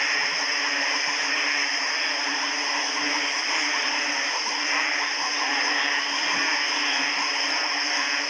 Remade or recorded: recorded